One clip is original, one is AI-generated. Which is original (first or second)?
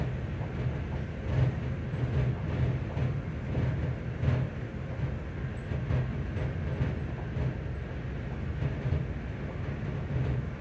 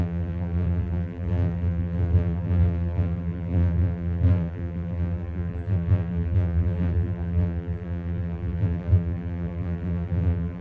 first